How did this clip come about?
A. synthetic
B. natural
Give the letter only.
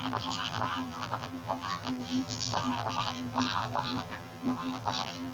A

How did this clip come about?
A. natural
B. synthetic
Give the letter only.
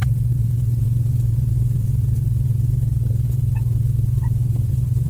B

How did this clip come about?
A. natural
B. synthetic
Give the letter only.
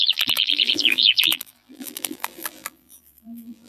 B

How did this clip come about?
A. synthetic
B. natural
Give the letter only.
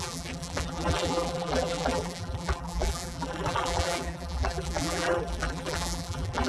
A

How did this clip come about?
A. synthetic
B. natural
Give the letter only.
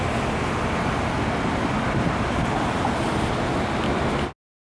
B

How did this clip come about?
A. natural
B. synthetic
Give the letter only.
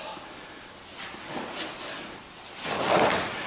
A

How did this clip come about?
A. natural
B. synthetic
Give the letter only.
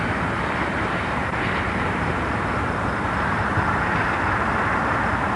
B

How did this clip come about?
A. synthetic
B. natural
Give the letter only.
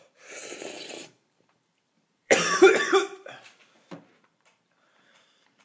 A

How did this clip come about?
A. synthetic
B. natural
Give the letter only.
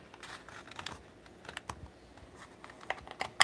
B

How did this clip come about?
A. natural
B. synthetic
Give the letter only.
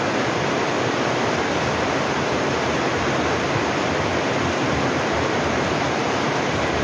A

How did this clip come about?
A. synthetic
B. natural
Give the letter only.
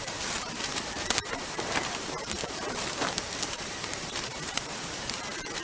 A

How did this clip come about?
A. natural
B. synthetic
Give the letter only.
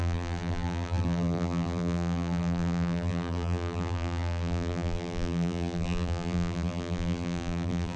B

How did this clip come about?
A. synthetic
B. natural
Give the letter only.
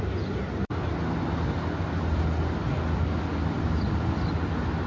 B